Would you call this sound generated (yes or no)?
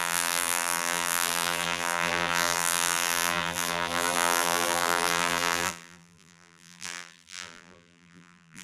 yes